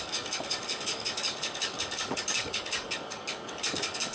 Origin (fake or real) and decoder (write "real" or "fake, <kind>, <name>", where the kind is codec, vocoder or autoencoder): fake, codec, DAC